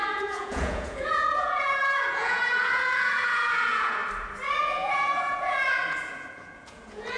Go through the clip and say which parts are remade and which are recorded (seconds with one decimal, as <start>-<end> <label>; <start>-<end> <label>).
0.0-4.0 remade; 4.0-4.6 recorded; 4.6-7.2 remade